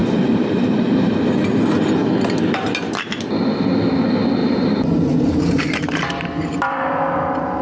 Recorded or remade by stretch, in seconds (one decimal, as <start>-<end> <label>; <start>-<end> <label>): 0.0-1.1 remade; 1.1-4.4 recorded; 4.4-7.6 remade